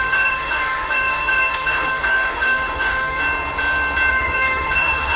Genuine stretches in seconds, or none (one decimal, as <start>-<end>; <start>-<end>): 3.2-4.1